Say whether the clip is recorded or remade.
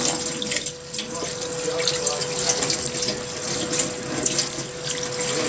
recorded